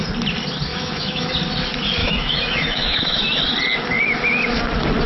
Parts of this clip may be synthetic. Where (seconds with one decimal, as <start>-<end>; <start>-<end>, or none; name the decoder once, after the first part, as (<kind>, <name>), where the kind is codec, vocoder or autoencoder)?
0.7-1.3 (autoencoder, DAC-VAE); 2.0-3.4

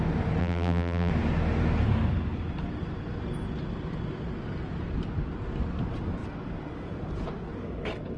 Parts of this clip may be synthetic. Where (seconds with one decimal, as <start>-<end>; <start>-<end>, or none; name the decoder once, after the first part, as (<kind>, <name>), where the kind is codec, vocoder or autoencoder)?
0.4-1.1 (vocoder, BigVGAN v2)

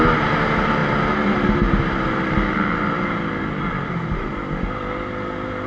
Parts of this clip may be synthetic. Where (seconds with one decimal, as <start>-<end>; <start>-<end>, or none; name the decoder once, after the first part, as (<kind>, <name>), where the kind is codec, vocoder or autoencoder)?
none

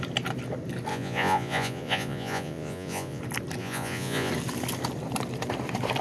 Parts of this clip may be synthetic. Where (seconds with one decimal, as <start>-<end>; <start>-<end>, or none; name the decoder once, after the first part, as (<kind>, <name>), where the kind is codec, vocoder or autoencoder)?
0.9-3.2 (vocoder, Vocos); 3.6-4.3

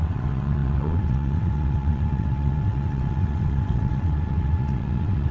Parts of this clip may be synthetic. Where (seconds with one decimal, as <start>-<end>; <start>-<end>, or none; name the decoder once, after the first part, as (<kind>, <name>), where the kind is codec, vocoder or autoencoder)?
0.0-5.3 (vocoder, WaveNeXt)